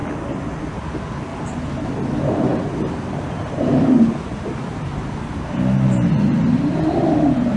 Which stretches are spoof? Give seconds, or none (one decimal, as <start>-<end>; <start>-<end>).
2.5-5.3